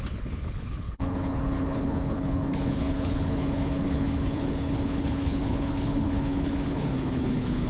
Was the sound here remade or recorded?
remade